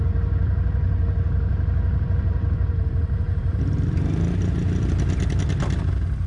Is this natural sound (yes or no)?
yes